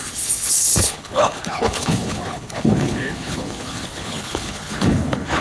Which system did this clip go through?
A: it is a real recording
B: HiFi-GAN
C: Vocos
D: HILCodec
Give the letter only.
D